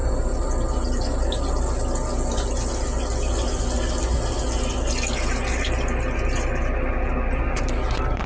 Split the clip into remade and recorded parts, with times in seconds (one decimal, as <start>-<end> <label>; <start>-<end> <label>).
0.0-8.3 recorded